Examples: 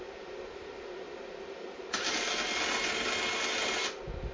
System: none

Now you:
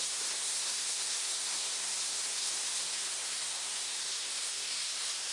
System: codec, SNAC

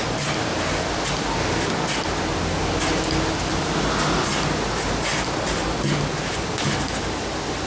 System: none